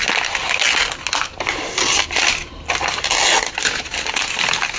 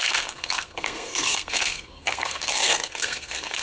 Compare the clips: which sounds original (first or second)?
first